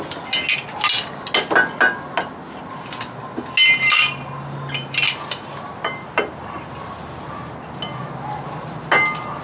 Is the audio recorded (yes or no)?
yes